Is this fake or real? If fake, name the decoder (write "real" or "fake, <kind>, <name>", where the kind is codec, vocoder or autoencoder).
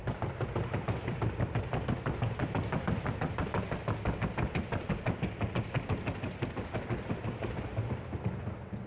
real